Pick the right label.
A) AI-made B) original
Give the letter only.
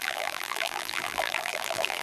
A